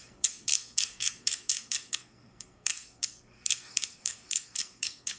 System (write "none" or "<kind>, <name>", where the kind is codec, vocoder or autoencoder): codec, SNAC